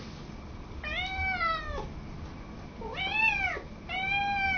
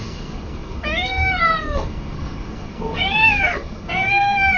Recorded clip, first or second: first